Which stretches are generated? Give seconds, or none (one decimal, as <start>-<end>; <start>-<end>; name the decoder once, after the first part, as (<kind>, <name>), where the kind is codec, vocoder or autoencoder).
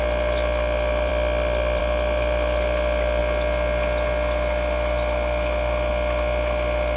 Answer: none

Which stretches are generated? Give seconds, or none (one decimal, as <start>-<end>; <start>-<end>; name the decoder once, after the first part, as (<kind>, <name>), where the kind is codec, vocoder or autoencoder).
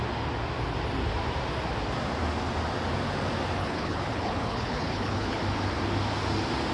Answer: 3.6-5.4 (codec, HILCodec)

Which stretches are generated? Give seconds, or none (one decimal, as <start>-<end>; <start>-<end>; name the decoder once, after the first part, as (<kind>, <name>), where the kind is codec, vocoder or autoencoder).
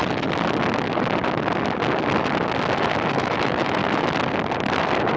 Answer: 3.1-3.8 (autoencoder, DAC-VAE)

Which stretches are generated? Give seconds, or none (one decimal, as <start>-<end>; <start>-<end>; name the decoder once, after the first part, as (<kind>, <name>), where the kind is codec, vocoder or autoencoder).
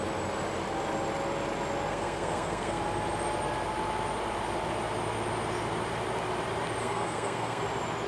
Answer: 1.9-2.8 (codec, SNAC); 6.8-7.6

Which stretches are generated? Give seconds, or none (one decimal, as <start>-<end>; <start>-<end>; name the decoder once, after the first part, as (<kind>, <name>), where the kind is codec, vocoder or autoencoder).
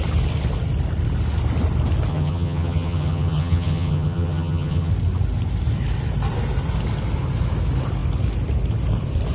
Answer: 2.1-4.9 (vocoder, HiFi-GAN)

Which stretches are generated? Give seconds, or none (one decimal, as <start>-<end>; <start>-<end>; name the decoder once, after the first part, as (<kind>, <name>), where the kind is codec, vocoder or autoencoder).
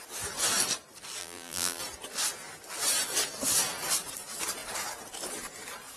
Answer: 1.2-1.8 (vocoder, BigVGAN v2)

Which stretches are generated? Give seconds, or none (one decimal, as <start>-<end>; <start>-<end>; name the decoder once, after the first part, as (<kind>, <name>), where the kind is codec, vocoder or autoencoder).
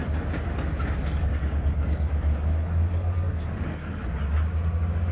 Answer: 1.0-4.0 (codec, DAC)